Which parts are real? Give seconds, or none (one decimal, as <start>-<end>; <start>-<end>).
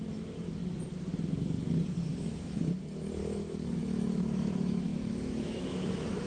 0.6-2.1